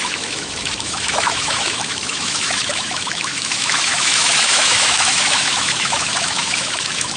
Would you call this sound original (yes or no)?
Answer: no